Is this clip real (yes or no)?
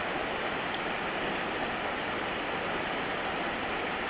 yes